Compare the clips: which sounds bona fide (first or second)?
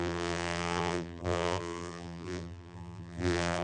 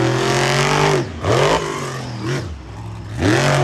second